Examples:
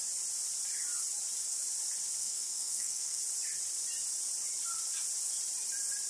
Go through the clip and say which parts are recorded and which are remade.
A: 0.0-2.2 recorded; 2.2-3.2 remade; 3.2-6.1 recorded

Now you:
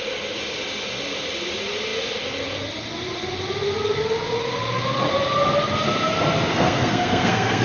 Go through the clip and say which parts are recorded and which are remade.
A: 0.0-6.5 recorded; 6.5-7.6 remade